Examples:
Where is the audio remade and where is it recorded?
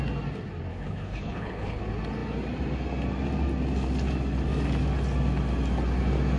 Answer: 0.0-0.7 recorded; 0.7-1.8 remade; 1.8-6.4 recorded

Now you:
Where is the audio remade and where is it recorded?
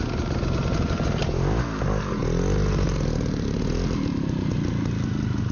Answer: 0.0-5.5 recorded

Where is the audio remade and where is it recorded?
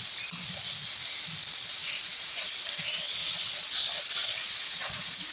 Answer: 0.0-1.8 recorded; 1.8-2.5 remade; 2.5-3.2 recorded; 3.2-3.7 remade; 3.7-4.4 recorded; 4.4-5.3 remade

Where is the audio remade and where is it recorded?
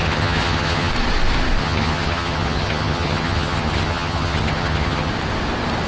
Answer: 0.0-0.9 remade; 0.9-1.6 recorded; 1.6-5.1 remade; 5.1-5.9 recorded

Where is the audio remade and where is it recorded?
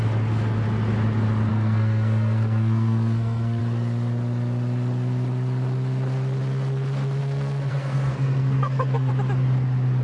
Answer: 0.0-1.5 recorded; 1.5-3.6 remade; 3.6-7.2 recorded; 7.2-9.1 remade; 9.1-10.0 recorded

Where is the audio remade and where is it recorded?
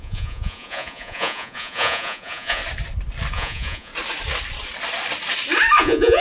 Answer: 0.0-2.6 remade; 2.6-3.3 recorded; 3.3-3.9 remade; 3.9-5.8 recorded; 5.8-6.2 remade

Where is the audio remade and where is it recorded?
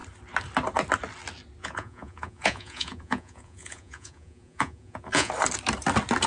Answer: 0.0-1.6 recorded; 1.6-5.3 remade; 5.3-6.3 recorded